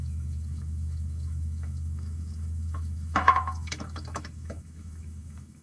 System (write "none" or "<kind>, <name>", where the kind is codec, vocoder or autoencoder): autoencoder, DAC-VAE